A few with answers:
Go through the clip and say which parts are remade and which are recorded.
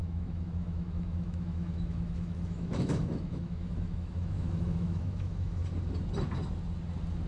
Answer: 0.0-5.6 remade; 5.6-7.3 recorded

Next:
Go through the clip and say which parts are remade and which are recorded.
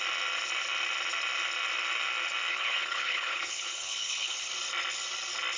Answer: 0.0-2.5 recorded; 2.5-4.5 remade; 4.5-5.6 recorded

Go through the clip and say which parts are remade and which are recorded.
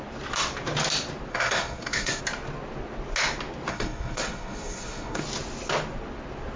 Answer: 0.0-1.3 recorded; 1.3-2.2 remade; 2.2-3.7 recorded; 3.7-5.2 remade; 5.2-6.6 recorded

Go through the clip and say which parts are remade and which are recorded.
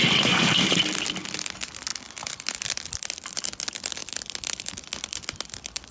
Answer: 0.0-5.9 recorded